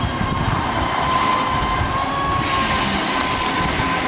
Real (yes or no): yes